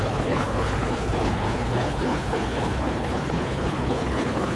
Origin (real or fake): fake